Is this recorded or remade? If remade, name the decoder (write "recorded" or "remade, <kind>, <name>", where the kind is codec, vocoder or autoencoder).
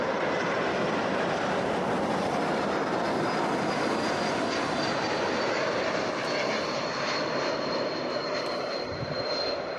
recorded